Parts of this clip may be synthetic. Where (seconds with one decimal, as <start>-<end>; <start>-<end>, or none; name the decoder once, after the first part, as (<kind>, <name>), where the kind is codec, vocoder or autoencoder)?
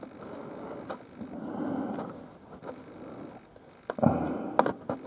none